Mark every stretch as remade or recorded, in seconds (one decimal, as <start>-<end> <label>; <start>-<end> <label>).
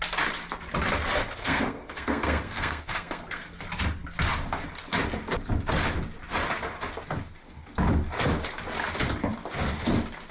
0.0-1.4 recorded; 1.4-3.5 remade; 3.5-10.3 recorded